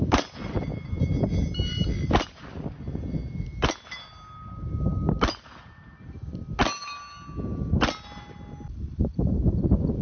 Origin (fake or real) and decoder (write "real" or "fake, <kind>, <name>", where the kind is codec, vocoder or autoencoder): real